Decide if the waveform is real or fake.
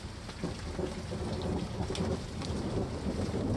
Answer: real